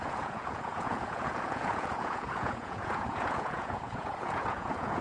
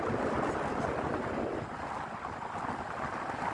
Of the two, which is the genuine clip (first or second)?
second